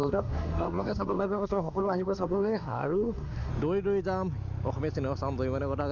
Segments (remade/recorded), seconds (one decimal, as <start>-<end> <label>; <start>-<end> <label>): 0.0-3.5 remade; 3.5-5.9 recorded